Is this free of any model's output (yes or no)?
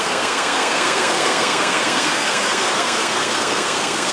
no